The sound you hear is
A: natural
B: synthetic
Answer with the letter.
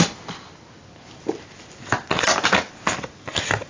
A